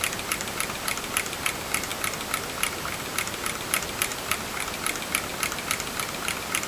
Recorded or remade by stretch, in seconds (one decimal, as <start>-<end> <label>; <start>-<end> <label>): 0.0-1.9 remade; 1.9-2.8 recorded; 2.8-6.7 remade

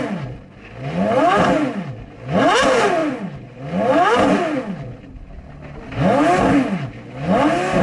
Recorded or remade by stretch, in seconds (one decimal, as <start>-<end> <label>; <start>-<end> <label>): 0.0-3.0 recorded; 3.0-3.6 remade; 3.6-7.8 recorded

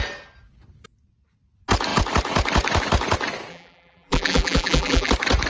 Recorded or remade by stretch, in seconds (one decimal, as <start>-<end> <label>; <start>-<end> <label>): 0.0-3.5 recorded; 3.5-5.1 remade; 5.1-5.5 recorded